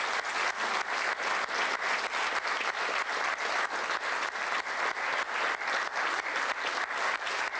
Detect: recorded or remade recorded